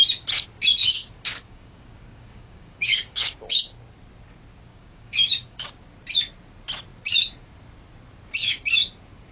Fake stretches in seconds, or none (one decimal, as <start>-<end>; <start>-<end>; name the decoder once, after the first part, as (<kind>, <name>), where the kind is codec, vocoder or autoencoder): 0.8-3.3 (codec, DAC); 4.7-5.7